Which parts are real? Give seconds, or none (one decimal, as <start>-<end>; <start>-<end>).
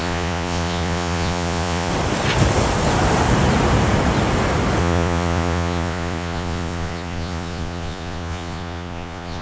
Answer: 1.9-4.8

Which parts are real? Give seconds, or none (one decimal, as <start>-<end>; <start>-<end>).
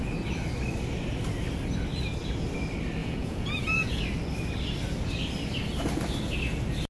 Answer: 0.0-3.0; 4.0-6.9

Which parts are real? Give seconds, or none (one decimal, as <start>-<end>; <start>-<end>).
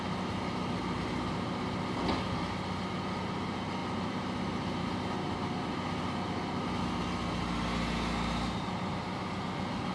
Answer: 0.0-9.9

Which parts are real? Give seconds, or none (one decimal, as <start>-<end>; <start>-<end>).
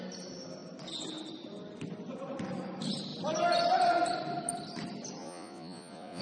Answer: 0.0-5.2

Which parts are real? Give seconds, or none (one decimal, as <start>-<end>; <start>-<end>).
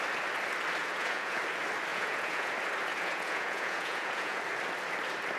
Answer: 0.0-0.8; 1.4-1.9; 2.5-2.9; 4.4-5.4